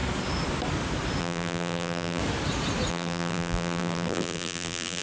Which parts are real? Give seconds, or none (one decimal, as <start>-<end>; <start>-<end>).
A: 0.0-1.2; 2.2-2.9